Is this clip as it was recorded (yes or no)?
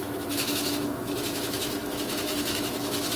no